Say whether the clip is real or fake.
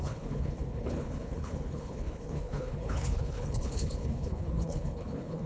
fake